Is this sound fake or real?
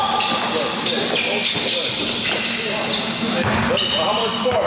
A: real